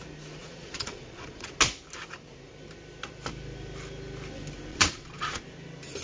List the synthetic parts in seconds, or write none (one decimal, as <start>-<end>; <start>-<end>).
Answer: 0.4-1.5; 4.7-5.4